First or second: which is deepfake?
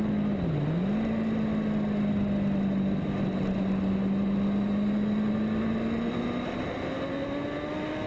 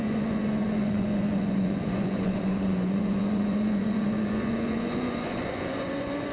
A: second